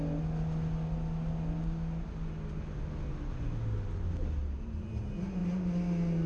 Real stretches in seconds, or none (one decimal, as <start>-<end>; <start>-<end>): 0.0-4.4; 5.0-6.3